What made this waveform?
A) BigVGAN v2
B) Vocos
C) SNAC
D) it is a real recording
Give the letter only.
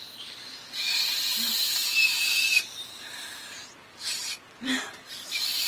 D